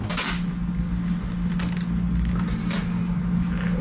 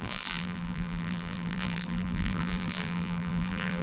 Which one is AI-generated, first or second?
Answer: second